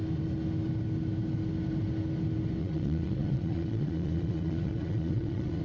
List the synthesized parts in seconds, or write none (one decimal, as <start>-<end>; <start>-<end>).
2.6-5.6